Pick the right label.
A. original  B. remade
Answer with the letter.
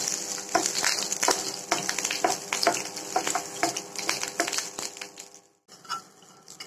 A